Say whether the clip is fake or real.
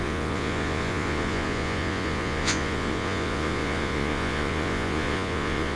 fake